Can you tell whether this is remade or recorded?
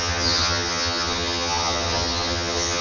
remade